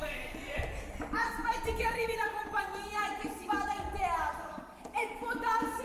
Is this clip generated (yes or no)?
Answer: yes